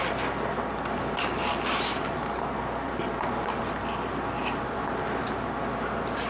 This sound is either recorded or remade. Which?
recorded